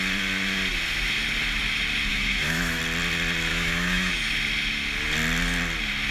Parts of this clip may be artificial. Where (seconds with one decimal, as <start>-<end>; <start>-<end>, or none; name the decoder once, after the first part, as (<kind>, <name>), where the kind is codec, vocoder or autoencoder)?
2.1-2.8 (autoencoder, DAC-VAE); 3.5-4.1